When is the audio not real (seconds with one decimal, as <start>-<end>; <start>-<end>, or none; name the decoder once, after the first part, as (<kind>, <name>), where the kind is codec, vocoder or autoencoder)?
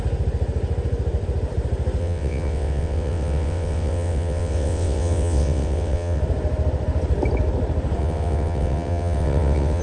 2.0-6.2 (vocoder, WaveNeXt); 8.0-9.8